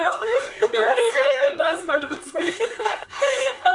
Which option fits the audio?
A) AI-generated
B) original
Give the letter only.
A